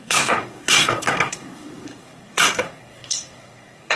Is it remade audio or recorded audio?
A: remade